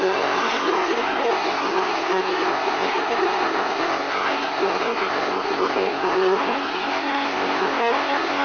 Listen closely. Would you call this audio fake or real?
fake